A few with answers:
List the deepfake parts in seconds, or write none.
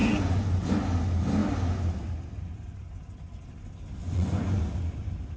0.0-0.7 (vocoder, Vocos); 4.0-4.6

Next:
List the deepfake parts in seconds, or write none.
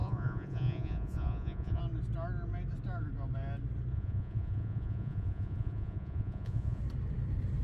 0.0-1.8 (vocoder, Vocos); 3.9-6.8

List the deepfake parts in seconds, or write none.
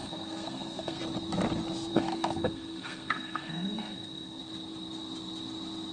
0.0-1.0 (codec, SNAC); 1.9-4.4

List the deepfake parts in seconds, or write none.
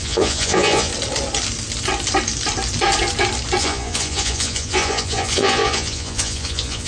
0.0-0.9 (vocoder, Vocos); 3.6-6.9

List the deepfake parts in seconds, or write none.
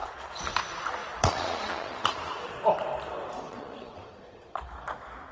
0.0-0.5 (vocoder, Vocos); 1.0-2.5; 3.5-4.6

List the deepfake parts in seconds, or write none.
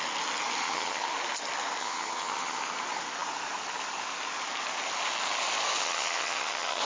0.6-1.1 (vocoder, HiFi-GAN); 1.8-2.6; 5.8-6.8